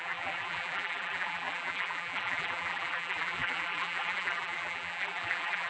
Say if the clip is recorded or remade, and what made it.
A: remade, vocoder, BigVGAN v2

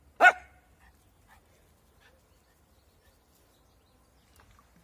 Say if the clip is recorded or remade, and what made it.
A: recorded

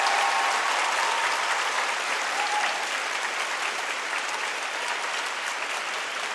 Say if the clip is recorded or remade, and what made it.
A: remade, vocoder, BigVGAN v2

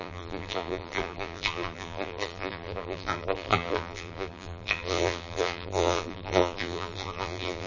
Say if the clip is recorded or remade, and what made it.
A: remade, vocoder, BigVGAN v2